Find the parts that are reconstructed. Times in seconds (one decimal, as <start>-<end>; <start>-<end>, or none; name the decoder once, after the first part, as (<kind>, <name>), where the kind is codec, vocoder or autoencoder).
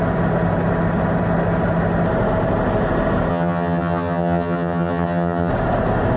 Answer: 3.3-5.5 (vocoder, HiFi-GAN)